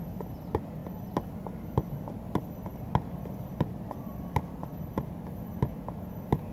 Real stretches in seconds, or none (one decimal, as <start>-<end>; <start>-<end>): 0.0-2.7; 4.6-6.5